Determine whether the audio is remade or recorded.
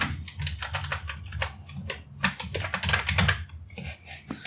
recorded